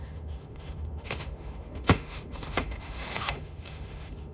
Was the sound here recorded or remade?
remade